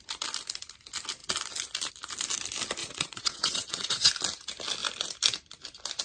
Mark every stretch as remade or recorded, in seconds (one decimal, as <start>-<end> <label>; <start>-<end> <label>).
0.0-2.8 recorded; 2.8-4.1 remade; 4.1-6.0 recorded